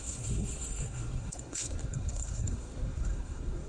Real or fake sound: fake